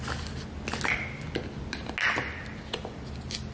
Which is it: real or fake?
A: real